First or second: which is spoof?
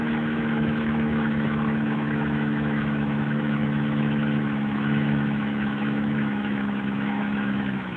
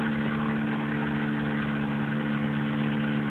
first